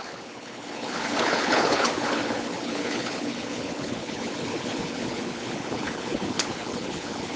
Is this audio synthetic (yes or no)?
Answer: yes